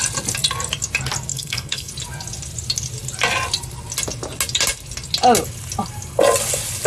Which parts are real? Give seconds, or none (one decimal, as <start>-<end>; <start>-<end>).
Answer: 0.0-1.3; 1.9-6.9